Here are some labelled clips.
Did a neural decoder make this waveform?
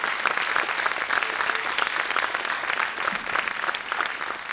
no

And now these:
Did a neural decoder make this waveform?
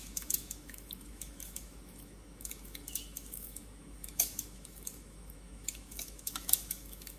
yes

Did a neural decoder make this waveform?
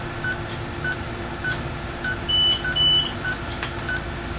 no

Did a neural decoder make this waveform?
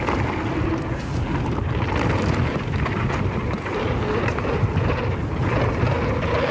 no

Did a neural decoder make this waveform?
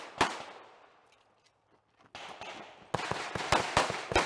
no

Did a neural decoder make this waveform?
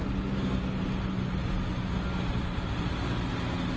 no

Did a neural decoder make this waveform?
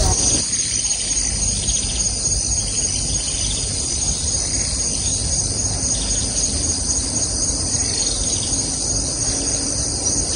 no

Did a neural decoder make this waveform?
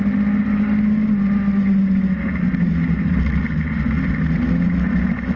no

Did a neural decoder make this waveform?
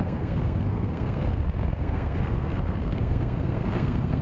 yes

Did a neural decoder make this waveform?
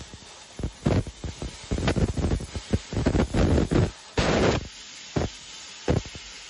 no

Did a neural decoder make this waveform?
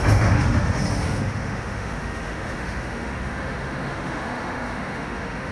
yes